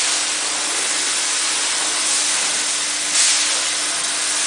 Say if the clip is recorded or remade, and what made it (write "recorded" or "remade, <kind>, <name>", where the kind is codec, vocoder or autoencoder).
recorded